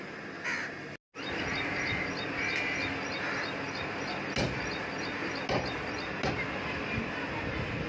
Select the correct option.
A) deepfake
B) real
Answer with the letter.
B